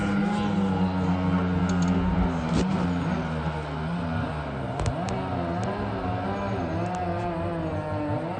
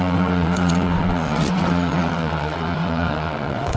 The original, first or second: first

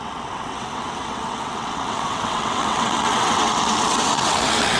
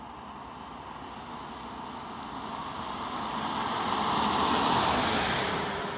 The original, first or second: second